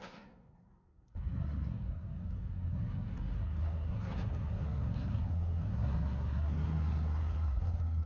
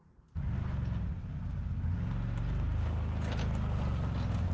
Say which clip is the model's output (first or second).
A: first